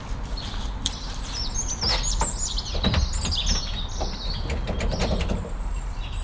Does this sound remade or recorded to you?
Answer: recorded